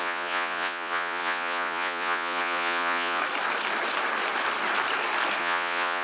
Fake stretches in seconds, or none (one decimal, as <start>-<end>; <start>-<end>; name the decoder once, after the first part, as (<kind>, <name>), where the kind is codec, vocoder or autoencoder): 0.0-3.2 (vocoder, Vocos); 5.4-6.0